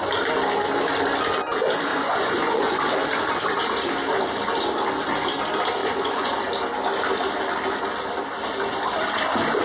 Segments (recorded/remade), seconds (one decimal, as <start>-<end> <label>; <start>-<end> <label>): 0.0-1.9 recorded; 1.9-2.8 remade; 2.8-5.8 recorded; 5.8-6.5 remade; 6.5-9.6 recorded